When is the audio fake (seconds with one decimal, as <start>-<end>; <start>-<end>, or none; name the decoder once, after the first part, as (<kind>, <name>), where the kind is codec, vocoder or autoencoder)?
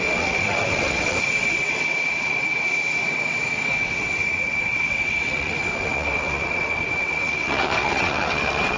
0.0-8.8 (vocoder, WaveNeXt)